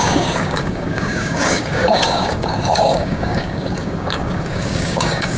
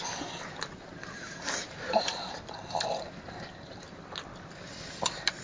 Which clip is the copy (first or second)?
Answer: first